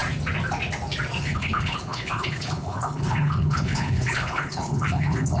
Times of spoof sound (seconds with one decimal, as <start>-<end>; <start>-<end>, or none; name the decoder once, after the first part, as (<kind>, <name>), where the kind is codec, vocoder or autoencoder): 1.2-5.4 (codec, HILCodec)